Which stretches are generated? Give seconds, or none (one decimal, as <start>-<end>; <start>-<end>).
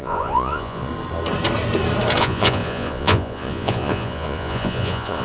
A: 0.0-0.9; 2.2-5.2